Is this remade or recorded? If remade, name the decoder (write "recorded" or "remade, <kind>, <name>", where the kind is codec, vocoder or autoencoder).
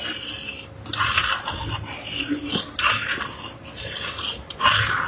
recorded